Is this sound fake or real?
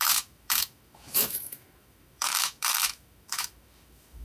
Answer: fake